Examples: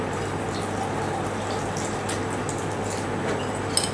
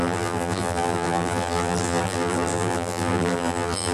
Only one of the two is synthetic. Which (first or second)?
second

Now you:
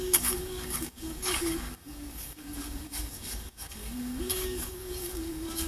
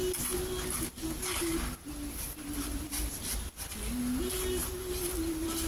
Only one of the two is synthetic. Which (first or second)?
first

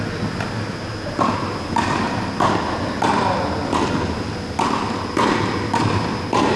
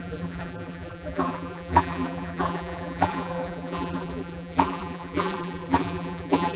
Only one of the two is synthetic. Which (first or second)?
second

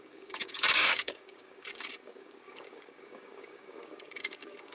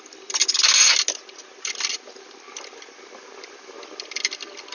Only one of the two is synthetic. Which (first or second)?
first